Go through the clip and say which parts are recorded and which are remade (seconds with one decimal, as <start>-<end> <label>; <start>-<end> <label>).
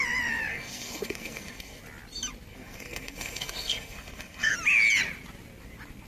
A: 0.0-0.5 recorded; 0.5-1.8 remade; 1.8-2.5 recorded; 2.5-4.5 remade; 4.5-6.1 recorded